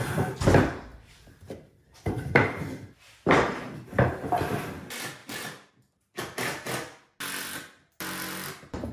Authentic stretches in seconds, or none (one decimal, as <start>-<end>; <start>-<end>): 0.0-0.9; 2.7-5.2; 5.7-8.9